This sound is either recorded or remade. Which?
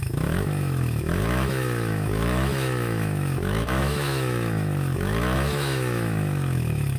remade